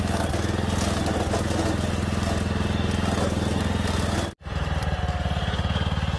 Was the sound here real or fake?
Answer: real